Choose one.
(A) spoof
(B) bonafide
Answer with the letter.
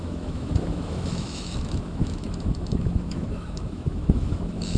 A